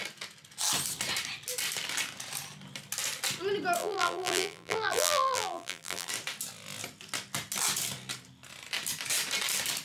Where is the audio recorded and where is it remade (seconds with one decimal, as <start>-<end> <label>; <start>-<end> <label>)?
0.0-3.8 recorded; 3.8-6.1 remade; 6.1-9.8 recorded